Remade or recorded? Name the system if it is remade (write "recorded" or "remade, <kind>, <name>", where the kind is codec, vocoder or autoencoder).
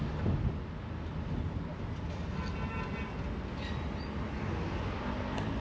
recorded